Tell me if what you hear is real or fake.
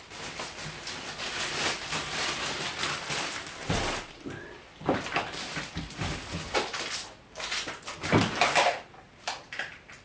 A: real